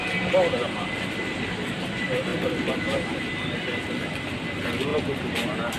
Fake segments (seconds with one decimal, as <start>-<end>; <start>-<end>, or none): none